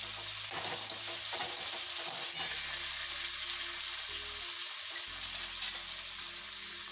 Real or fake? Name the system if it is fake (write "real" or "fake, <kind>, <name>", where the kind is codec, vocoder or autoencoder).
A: real